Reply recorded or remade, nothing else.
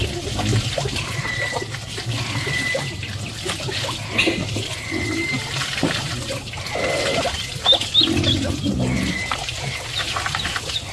recorded